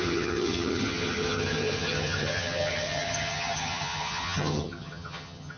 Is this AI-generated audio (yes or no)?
yes